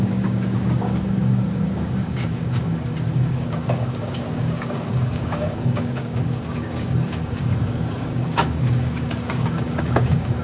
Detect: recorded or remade remade